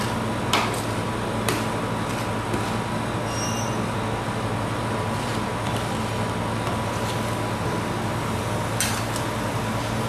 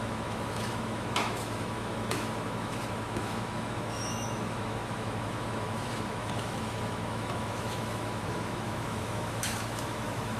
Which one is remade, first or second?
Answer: second